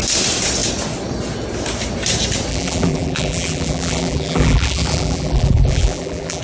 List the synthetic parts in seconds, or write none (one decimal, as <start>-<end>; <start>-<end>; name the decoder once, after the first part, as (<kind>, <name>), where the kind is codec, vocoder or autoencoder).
2.5-6.4 (vocoder, BigVGAN v2)

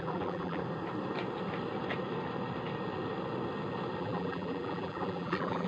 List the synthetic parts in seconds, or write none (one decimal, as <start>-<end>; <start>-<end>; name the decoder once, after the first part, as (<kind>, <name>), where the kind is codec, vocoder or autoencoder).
0.0-0.6 (vocoder, BigVGAN v2); 4.0-5.7